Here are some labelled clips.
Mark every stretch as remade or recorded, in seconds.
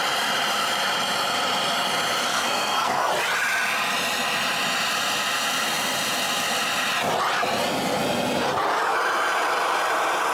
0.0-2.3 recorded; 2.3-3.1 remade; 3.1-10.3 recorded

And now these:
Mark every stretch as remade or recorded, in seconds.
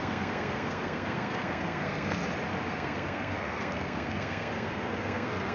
0.0-2.2 remade; 2.2-2.7 recorded; 2.7-5.5 remade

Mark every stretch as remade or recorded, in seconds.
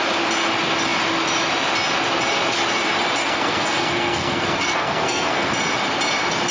0.0-3.2 recorded; 3.2-5.5 remade; 5.5-6.5 recorded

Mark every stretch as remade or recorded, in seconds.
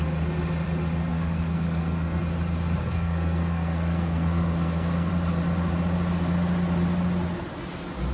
0.0-1.1 recorded; 1.1-2.2 remade; 2.2-2.8 recorded; 2.8-5.1 remade; 5.1-8.1 recorded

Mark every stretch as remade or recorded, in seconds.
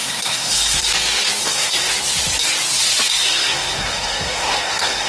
0.0-0.8 remade; 0.8-1.4 recorded; 1.4-1.9 remade; 1.9-3.1 recorded; 3.1-5.1 remade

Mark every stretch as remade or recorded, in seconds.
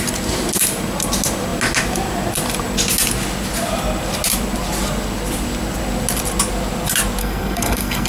0.0-7.2 recorded; 7.2-8.1 remade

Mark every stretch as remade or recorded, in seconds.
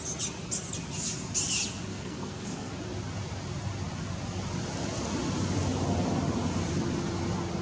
0.0-1.9 recorded; 1.9-2.7 remade; 2.7-7.6 recorded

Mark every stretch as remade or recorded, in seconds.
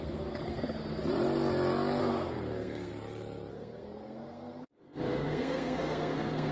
0.0-1.0 remade; 1.0-2.0 recorded; 2.0-2.9 remade; 2.9-3.5 recorded; 3.5-6.5 remade